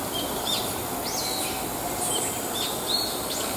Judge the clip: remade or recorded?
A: recorded